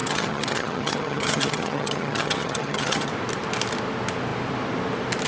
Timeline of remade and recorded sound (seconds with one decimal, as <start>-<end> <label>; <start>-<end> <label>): 0.0-3.1 remade; 3.1-5.3 recorded